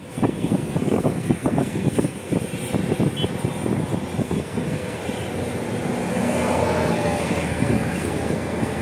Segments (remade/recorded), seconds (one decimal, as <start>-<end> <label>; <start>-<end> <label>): 0.0-2.3 remade; 2.3-4.2 recorded; 4.2-5.0 remade; 5.0-6.1 recorded; 6.1-8.8 remade